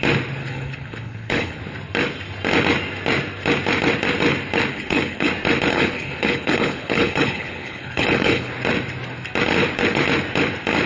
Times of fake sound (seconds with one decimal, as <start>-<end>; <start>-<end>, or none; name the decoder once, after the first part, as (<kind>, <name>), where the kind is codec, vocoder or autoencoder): 0.4-1.6 (codec, HILCodec); 4.7-5.3; 5.7-8.5